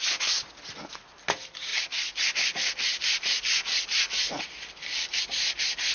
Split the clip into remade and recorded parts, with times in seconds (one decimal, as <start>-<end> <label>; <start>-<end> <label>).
0.0-5.9 recorded